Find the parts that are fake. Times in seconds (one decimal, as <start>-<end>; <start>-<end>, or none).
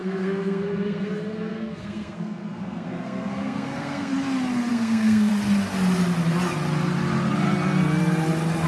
0.0-4.1; 4.7-5.3